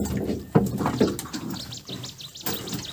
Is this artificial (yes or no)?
no